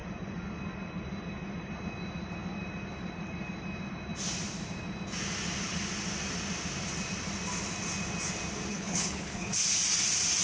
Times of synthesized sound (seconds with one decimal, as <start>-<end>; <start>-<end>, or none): 8.7-9.5